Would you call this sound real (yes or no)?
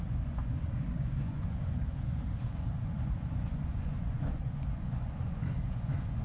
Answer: no